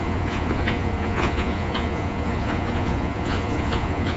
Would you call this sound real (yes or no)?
no